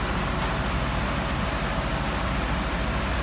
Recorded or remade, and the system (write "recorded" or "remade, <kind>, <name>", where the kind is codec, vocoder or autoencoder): recorded